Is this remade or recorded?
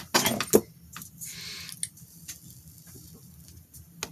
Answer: recorded